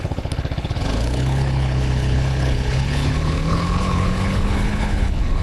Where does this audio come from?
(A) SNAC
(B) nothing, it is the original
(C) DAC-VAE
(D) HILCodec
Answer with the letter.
D